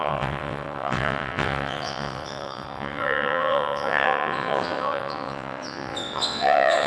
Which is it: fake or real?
fake